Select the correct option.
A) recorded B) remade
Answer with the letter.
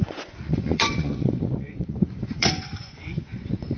B